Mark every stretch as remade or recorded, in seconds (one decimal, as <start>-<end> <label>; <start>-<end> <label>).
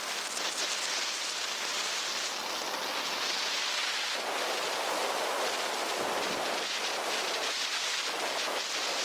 0.0-9.0 recorded